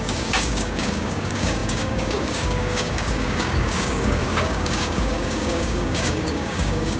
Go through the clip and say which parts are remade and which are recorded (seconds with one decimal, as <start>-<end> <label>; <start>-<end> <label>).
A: 0.0-7.0 remade